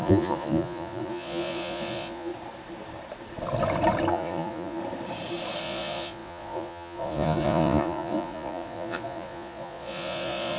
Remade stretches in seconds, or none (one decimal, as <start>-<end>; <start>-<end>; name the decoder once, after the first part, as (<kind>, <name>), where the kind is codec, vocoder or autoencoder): 0.0-2.3 (vocoder, Vocos); 4.1-4.8; 5.6-10.6